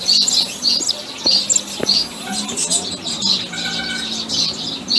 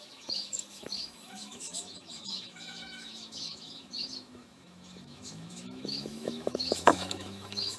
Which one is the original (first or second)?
first